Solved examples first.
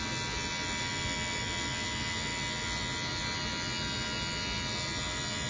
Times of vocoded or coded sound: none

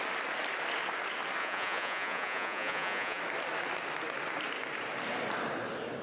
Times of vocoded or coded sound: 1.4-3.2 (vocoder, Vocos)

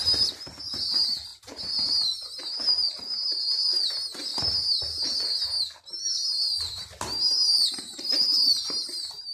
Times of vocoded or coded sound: none

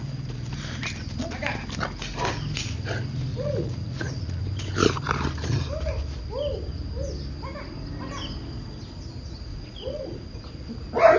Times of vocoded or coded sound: 3.3-4.4 (vocoder, Vocos); 9.5-10.5